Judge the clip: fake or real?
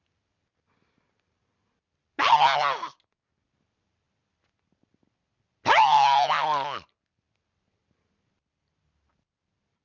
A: real